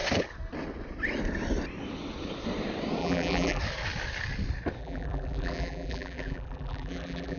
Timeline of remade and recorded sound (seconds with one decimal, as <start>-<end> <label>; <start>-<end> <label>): 0.0-3.0 recorded; 3.0-3.6 remade; 3.6-4.8 recorded; 4.8-7.4 remade